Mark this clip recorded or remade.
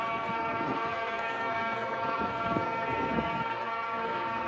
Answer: remade